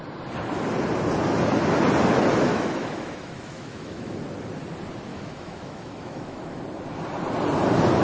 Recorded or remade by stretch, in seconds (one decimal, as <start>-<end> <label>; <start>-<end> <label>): 0.0-2.5 recorded; 2.5-4.1 remade; 4.1-5.1 recorded; 5.1-6.6 remade; 6.6-8.0 recorded